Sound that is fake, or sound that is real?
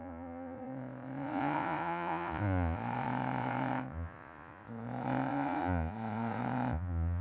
fake